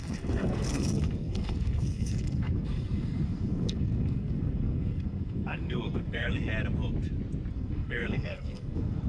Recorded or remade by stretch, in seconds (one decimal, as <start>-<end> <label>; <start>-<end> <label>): 0.0-6.5 remade; 6.5-7.5 recorded; 7.5-9.1 remade